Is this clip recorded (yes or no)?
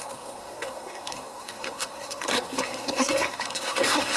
no